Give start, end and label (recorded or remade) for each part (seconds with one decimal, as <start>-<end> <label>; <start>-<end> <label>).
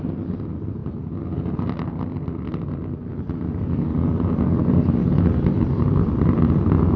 0.0-0.8 remade; 0.8-1.8 recorded; 1.8-7.0 remade